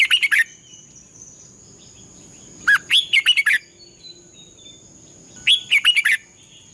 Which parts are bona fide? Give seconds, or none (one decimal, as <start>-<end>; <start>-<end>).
0.0-6.7